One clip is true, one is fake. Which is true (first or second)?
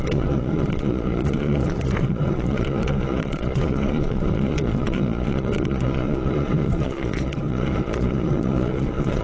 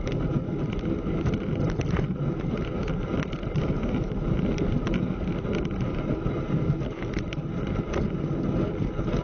second